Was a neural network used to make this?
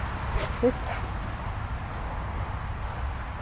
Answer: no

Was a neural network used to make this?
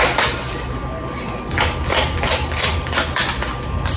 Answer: no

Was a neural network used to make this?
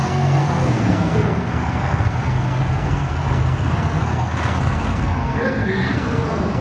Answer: yes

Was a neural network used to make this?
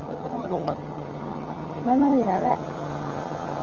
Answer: yes